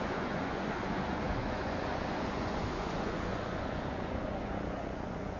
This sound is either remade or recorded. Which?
remade